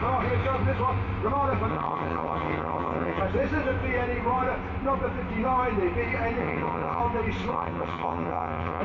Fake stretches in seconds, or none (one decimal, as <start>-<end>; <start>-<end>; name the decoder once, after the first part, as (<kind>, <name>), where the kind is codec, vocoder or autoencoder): 1.7-3.2 (vocoder, HiFi-GAN); 6.4-7.0; 7.5-8.8